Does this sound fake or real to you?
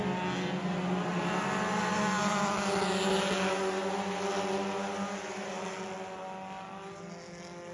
real